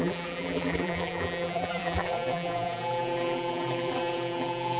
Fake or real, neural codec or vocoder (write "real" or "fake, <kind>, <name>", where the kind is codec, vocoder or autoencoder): fake, vocoder, BigVGAN v2